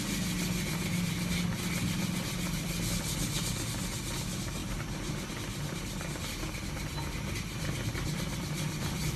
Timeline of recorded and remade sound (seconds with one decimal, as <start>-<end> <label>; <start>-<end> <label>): 0.0-9.2 recorded